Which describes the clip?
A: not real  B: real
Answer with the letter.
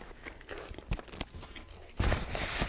B